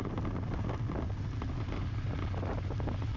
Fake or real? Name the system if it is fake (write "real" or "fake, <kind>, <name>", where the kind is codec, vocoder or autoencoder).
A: real